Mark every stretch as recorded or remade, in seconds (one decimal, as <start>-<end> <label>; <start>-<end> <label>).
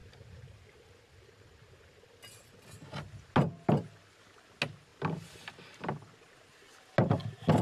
0.0-7.6 recorded